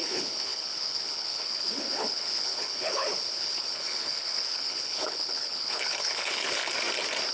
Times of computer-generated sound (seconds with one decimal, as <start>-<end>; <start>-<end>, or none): 0.0-6.6